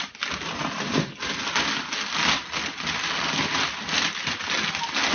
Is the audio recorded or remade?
recorded